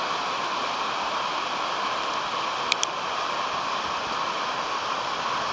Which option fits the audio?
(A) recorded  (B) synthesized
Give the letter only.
A